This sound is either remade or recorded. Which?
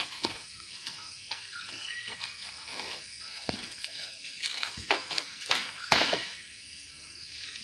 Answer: remade